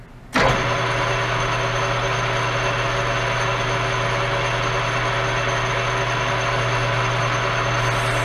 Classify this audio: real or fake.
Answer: real